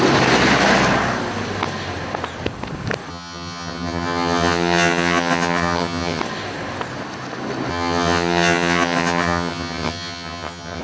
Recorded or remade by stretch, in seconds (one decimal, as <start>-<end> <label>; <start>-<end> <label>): 0.0-3.1 recorded; 3.1-6.2 remade; 6.2-7.7 recorded; 7.7-10.8 remade